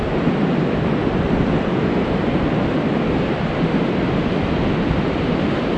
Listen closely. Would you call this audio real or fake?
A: real